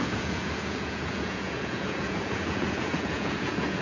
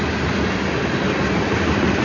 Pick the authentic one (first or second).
second